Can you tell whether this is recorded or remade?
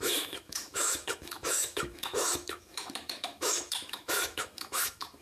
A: remade